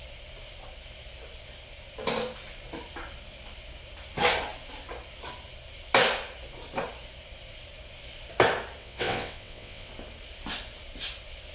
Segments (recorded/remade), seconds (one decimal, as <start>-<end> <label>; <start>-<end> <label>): 0.0-8.8 recorded; 8.8-9.9 remade; 9.9-11.5 recorded